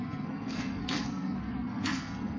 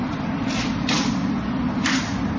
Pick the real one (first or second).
second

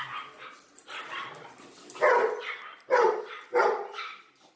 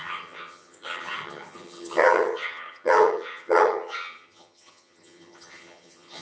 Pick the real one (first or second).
first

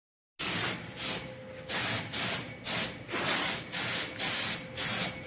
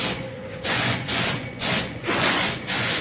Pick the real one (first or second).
first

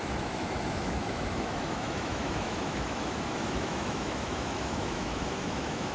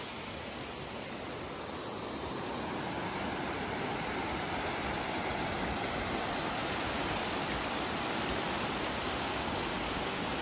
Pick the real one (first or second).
second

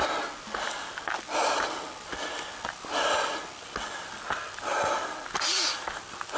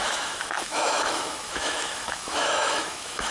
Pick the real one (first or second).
first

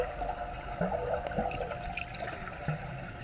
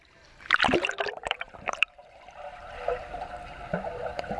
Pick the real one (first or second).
first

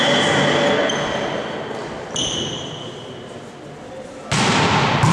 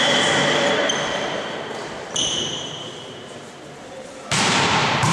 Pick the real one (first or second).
first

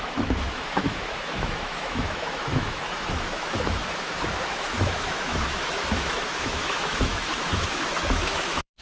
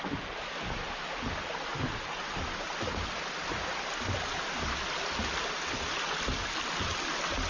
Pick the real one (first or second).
second